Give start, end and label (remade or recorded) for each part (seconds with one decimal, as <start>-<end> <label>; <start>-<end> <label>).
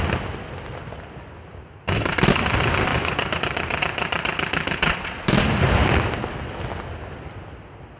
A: 0.0-2.9 recorded; 2.9-3.4 remade; 3.4-8.0 recorded